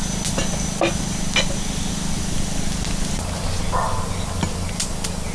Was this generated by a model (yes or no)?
no